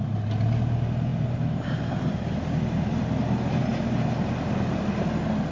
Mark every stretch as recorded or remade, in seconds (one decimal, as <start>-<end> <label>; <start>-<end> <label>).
0.0-5.5 recorded